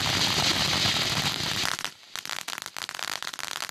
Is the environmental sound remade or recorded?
recorded